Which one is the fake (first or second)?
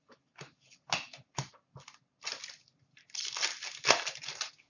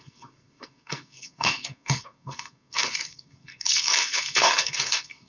second